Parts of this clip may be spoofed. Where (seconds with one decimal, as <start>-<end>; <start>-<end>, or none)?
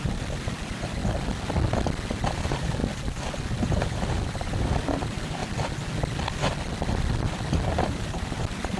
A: 0.0-1.0; 2.4-2.8; 3.5-5.4; 7.7-8.8